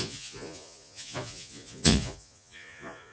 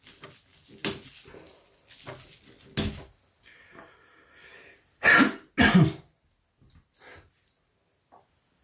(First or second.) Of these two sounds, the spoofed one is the first